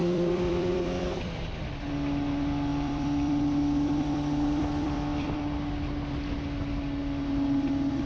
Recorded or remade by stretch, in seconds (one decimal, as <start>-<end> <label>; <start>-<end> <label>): 0.0-1.7 remade; 1.7-2.7 recorded; 2.7-5.4 remade; 5.4-8.1 recorded